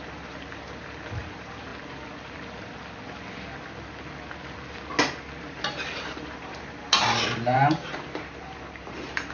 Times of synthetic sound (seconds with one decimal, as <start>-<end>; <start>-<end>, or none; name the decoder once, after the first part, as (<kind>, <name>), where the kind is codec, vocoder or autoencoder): 0.0-1.7 (vocoder, BigVGAN v2); 5.4-9.3